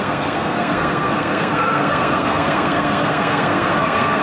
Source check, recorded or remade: remade